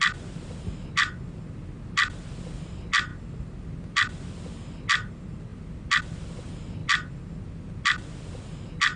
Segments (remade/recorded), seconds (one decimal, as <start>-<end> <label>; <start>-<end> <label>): 0.0-9.0 recorded